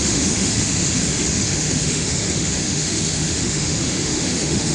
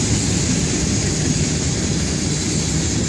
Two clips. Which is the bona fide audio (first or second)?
second